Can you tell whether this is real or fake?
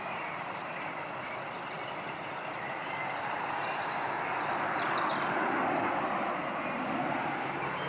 real